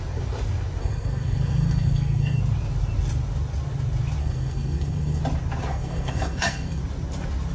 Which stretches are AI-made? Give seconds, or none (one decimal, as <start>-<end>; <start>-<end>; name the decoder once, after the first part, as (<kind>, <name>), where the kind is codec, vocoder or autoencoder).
0.8-2.4 (codec, SNAC); 4.2-5.2; 5.7-6.8